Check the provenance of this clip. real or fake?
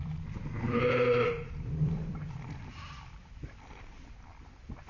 fake